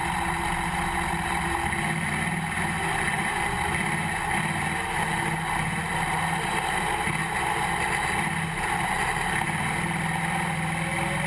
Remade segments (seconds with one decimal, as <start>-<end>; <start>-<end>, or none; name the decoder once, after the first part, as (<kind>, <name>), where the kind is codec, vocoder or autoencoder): none